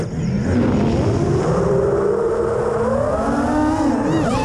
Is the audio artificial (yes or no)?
no